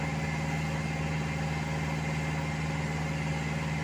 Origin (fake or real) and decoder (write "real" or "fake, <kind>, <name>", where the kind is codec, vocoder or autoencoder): real